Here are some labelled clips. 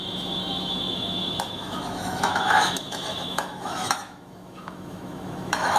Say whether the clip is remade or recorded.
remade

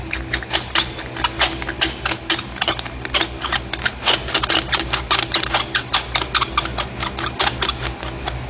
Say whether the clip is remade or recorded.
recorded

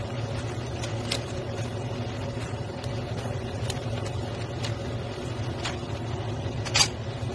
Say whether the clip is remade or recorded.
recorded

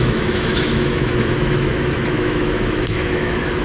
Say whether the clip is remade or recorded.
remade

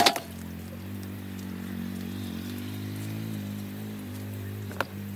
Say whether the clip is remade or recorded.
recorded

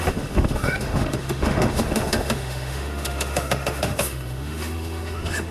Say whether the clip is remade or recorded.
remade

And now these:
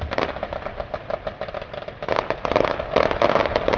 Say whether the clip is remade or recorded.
recorded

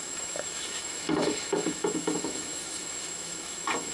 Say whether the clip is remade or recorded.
remade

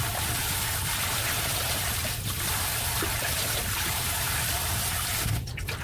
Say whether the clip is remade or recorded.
recorded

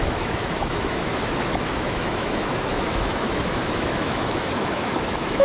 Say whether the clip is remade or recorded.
remade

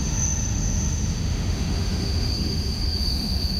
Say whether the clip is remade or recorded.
remade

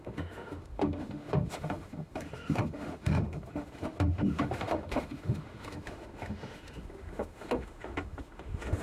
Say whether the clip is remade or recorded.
remade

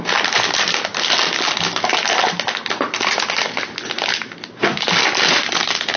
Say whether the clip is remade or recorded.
recorded